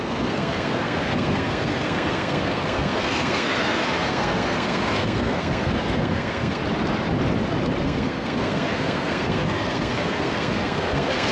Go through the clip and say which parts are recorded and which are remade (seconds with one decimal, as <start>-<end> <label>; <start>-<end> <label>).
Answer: 0.0-6.6 remade; 6.6-7.8 recorded; 7.8-11.3 remade